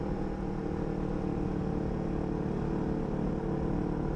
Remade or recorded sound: recorded